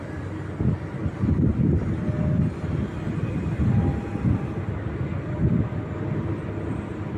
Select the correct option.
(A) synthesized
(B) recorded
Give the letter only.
B